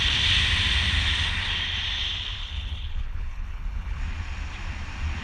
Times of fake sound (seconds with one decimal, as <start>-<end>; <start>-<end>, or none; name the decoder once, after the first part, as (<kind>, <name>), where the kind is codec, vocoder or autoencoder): 2.4-4.0 (codec, HILCodec)